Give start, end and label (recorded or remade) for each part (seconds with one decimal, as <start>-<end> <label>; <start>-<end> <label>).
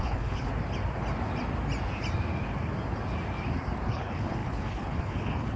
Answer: 0.0-0.5 remade; 0.5-3.9 recorded; 3.9-5.6 remade